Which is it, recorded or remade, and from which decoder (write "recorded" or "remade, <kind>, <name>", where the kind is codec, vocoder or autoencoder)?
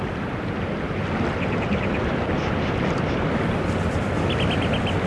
recorded